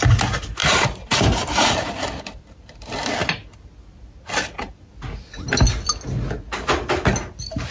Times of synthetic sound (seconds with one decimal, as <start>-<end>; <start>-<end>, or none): 0.6-2.4